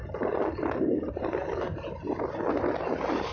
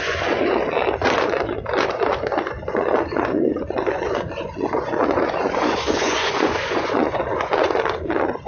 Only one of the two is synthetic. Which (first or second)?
second